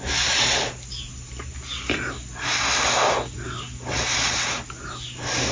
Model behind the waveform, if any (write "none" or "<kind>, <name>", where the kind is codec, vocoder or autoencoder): none